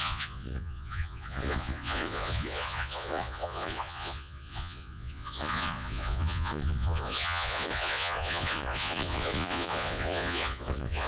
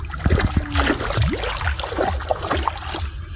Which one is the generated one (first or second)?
first